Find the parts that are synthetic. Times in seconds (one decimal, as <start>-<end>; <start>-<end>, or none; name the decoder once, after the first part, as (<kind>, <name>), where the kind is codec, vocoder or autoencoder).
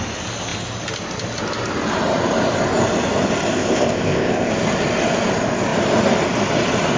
3.5-4.5 (codec, ZipCodec)